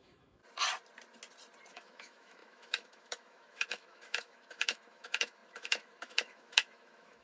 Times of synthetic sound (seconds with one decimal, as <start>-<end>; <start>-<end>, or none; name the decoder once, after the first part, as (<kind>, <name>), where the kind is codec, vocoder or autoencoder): 0.0-0.4 (autoencoder, DAC-VAE); 1.7-7.2